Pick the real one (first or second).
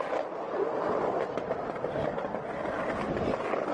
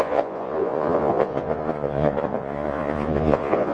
first